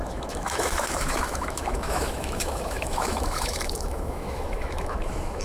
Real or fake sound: fake